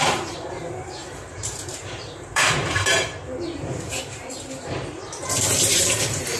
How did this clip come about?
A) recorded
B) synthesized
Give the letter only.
B